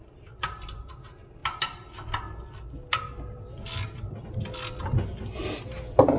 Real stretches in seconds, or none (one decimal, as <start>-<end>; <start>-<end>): 0.0-6.2